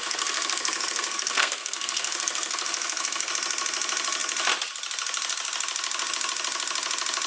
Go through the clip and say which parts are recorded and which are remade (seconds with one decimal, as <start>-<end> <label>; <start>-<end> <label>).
0.0-3.3 remade; 3.3-7.3 recorded